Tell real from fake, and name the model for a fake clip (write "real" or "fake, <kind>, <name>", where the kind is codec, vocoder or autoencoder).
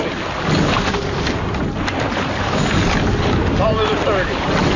real